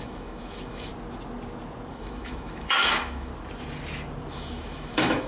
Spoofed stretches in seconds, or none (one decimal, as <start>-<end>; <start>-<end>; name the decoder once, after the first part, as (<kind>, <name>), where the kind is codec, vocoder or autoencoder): 0.0-0.9 (autoencoder, DAC-VAE); 1.9-3.3; 4.3-5.3